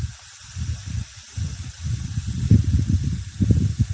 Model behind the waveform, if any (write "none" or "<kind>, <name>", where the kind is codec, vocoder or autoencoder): none